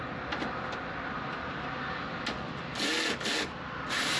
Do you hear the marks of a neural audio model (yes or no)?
no